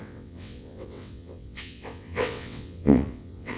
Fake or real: fake